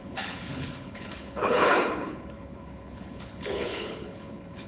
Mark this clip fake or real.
fake